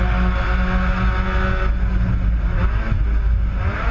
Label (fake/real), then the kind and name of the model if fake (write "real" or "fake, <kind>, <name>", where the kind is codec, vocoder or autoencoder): real